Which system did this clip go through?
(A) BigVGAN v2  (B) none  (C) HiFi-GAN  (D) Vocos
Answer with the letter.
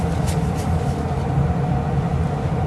B